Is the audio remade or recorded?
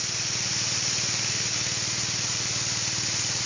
recorded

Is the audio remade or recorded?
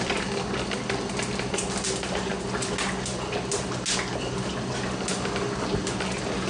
recorded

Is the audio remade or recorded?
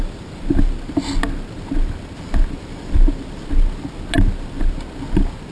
recorded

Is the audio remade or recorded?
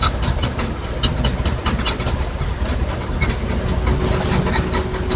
recorded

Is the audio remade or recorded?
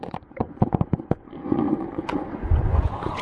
remade